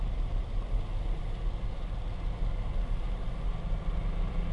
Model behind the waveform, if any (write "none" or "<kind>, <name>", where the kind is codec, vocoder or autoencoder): none